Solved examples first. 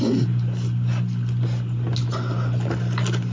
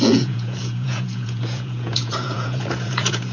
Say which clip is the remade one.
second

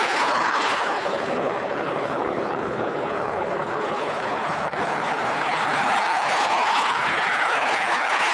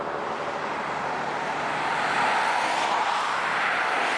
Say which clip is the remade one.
first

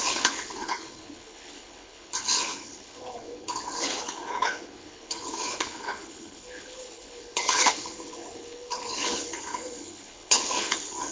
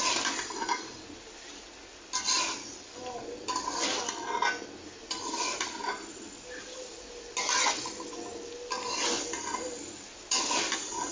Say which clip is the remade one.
first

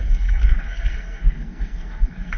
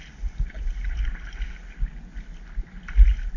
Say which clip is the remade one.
first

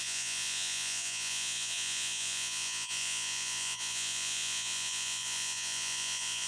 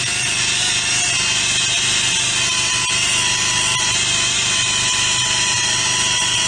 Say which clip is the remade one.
first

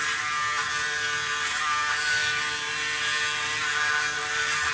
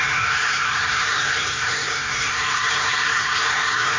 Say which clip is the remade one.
second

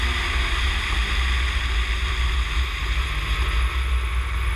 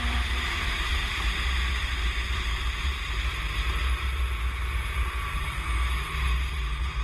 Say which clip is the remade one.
second